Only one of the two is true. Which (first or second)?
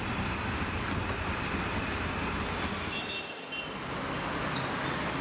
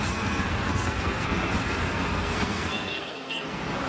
first